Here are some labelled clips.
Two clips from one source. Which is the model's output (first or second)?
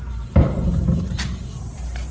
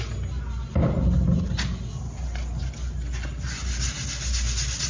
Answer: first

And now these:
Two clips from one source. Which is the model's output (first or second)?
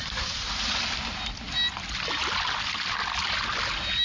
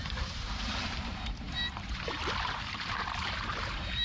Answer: second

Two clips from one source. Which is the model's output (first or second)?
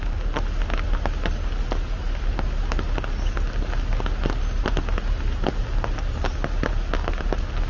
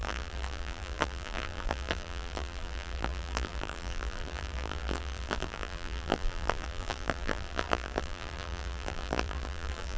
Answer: second